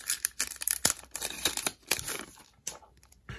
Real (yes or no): no